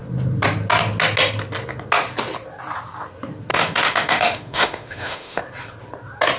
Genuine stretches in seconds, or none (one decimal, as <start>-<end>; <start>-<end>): 0.0-3.5; 5.4-6.4